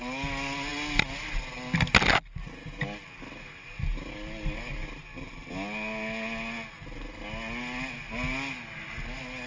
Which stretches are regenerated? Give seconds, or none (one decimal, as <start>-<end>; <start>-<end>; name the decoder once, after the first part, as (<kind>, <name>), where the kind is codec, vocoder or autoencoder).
none